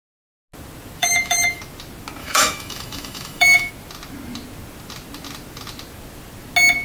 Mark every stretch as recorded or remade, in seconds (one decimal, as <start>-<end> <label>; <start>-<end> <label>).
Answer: 0.0-1.0 recorded; 1.0-1.6 remade; 1.6-2.2 recorded; 2.2-3.7 remade; 3.7-6.8 recorded